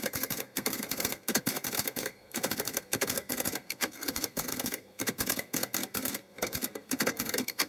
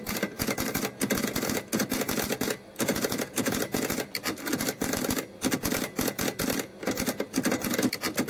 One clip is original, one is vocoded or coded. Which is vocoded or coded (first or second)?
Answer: first